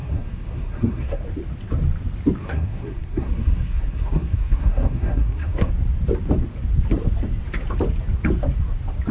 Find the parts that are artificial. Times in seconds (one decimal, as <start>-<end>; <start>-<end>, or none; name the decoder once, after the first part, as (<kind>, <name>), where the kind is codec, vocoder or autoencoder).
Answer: 0.0-1.2 (codec, SNAC); 2.4-5.7